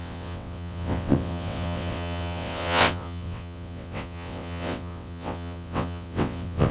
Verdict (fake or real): fake